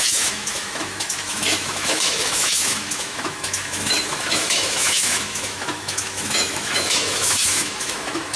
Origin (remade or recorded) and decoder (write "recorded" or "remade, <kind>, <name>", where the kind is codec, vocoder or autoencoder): remade, autoencoder, DAC-VAE